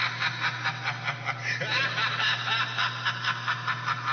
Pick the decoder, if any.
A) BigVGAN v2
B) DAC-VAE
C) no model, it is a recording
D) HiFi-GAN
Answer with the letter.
C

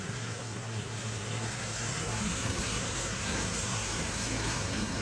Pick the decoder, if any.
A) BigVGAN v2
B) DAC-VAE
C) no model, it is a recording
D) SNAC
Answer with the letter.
D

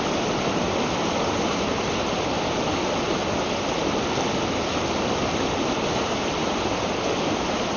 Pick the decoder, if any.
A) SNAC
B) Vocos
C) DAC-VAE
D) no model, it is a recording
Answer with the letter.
D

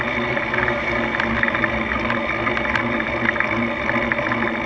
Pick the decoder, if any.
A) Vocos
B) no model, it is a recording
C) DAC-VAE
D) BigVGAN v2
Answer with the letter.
B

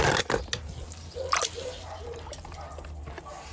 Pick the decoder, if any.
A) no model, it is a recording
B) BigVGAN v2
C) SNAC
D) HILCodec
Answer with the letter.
A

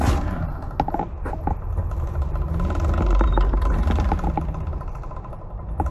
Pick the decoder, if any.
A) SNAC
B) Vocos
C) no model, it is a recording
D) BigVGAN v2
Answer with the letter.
C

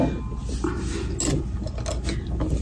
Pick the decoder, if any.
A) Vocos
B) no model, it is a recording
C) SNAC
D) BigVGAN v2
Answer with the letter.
B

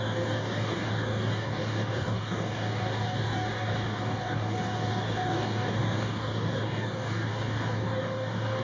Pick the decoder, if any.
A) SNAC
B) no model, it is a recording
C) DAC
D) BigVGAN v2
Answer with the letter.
C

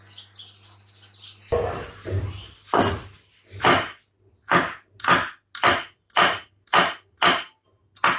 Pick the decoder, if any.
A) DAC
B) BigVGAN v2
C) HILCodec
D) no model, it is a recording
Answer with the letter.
D